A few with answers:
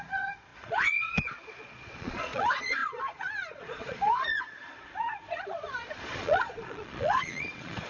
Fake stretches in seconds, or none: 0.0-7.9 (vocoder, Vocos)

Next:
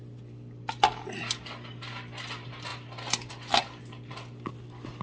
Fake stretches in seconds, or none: none

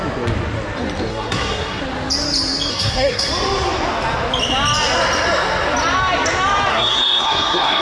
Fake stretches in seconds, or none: 1.1-1.8 (codec, SNAC); 2.7-3.3; 6.7-7.8

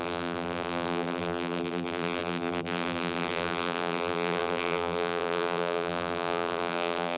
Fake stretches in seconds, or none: 0.0-7.2 (vocoder, BigVGAN v2)

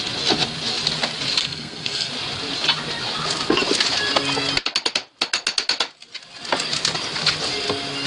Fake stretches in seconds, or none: 1.4-2.1 (codec, SNAC)

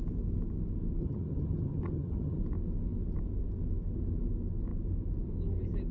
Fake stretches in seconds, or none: 1.0-2.4 (vocoder, HiFi-GAN)

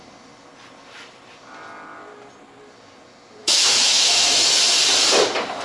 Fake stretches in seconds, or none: 3.4-4.6 (autoencoder, DAC-VAE)

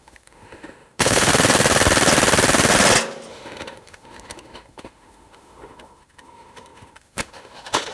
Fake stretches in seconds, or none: 0.0-1.3 (autoencoder, DAC-VAE); 3.3-7.9